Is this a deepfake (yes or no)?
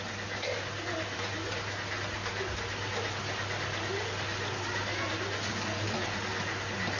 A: no